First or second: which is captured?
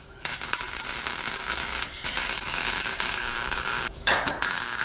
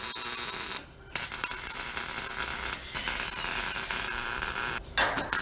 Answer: second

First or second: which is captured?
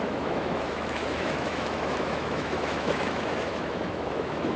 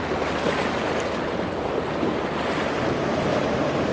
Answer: second